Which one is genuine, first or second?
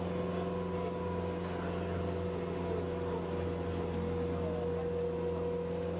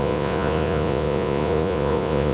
first